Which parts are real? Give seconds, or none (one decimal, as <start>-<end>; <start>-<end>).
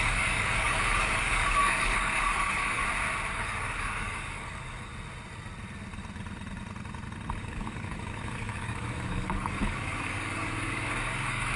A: 2.8-3.3; 4.9-7.4